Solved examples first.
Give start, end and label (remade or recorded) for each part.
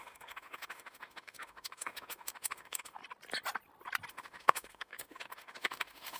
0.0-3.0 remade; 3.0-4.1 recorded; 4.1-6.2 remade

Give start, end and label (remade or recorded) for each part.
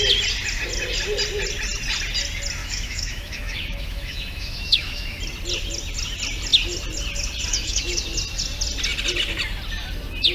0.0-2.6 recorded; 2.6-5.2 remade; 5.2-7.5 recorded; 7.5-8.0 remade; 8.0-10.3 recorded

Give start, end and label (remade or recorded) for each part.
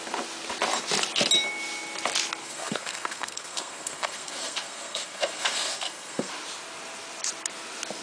0.0-2.4 recorded; 2.4-6.3 remade; 6.3-8.0 recorded